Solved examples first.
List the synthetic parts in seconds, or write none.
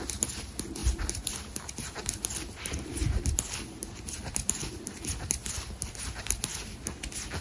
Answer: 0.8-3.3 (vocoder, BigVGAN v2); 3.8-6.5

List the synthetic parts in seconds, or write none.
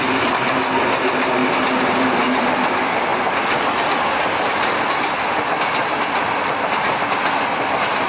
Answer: 0.0-1.4 (vocoder, BigVGAN v2); 2.0-3.1; 6.8-8.1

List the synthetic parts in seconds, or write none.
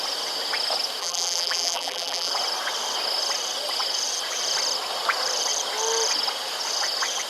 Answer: 1.0-2.3 (vocoder, BigVGAN v2)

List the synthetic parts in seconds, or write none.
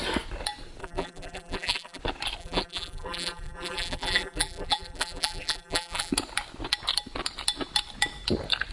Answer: 0.8-2.0 (vocoder, BigVGAN v2); 2.4-6.1